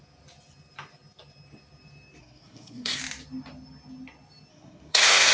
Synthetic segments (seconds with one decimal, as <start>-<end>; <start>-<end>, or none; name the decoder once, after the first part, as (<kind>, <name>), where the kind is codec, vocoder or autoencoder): 2.2-3.0 (codec, SNAC); 4.5-5.3